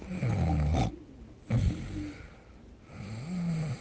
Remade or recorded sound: recorded